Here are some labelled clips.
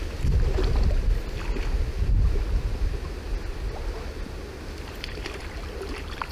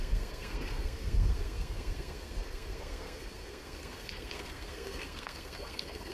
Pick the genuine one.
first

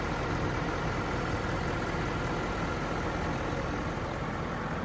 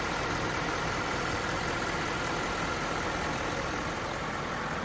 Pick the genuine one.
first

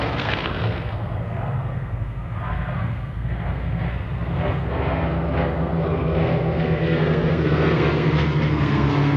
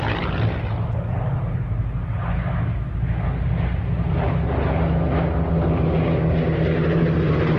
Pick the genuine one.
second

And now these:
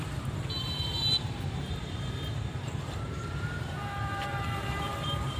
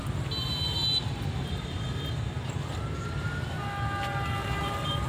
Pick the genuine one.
second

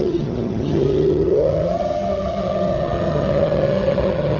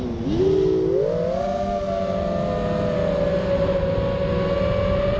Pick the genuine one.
second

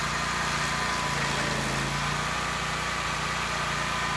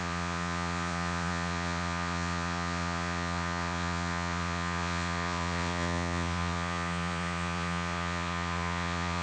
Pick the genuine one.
first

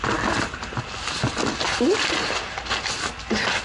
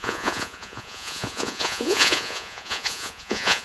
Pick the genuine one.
first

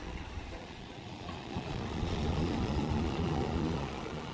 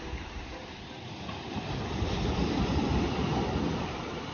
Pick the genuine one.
second